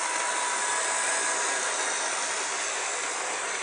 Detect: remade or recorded recorded